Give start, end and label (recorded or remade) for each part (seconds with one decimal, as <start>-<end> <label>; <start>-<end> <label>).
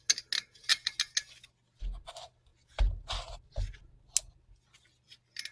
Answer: 0.0-5.5 recorded